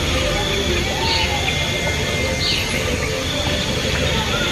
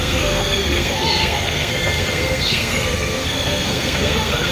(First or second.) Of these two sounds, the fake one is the second